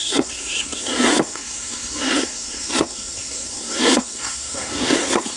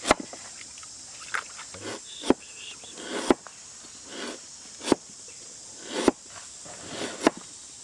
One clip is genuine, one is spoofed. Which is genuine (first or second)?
second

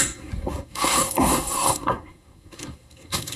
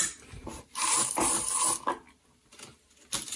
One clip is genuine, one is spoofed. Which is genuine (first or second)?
second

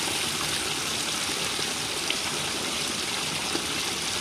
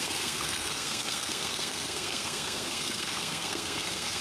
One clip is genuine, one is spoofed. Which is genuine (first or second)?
first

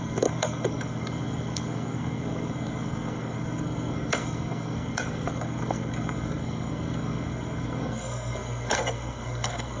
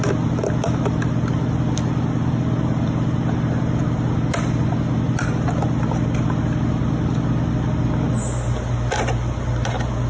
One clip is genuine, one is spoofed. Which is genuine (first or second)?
second